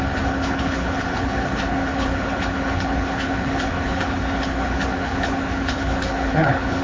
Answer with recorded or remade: remade